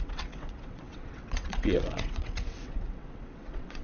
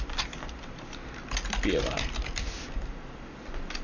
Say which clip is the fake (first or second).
first